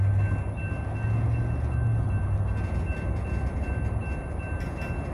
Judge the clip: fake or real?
real